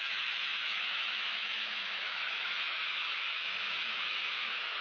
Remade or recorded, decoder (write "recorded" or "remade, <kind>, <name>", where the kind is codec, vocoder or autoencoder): remade, autoencoder, DAC-VAE